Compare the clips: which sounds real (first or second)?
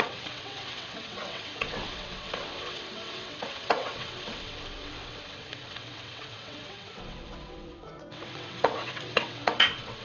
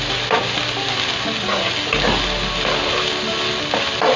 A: second